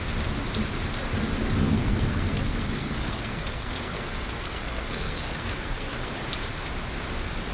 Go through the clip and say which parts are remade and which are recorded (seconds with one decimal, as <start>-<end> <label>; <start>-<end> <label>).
0.0-1.7 recorded; 1.7-6.1 remade; 6.1-7.5 recorded

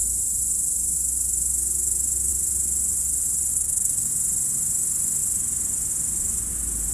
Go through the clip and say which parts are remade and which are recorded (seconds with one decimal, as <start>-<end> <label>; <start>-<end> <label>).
0.0-3.5 recorded; 3.5-4.1 remade; 4.1-6.9 recorded

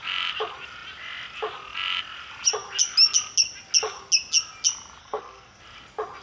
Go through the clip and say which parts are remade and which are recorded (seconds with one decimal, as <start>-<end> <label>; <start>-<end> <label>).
0.0-5.0 recorded; 5.0-5.6 remade; 5.6-6.2 recorded

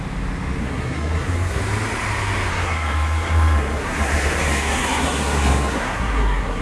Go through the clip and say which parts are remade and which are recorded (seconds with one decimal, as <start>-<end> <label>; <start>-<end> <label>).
0.0-0.6 recorded; 0.6-1.6 remade; 1.6-2.5 recorded; 2.5-6.6 remade

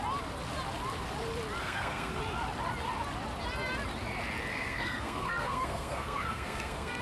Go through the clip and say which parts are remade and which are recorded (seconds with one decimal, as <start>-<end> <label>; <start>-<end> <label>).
0.0-1.6 recorded; 1.6-2.2 remade; 2.2-4.5 recorded; 4.5-7.0 remade

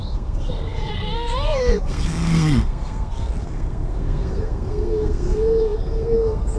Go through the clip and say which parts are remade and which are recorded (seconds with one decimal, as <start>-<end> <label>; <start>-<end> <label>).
0.0-6.6 remade